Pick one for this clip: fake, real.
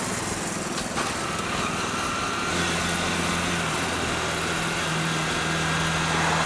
real